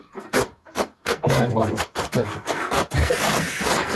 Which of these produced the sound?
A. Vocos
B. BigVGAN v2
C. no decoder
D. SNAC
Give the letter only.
D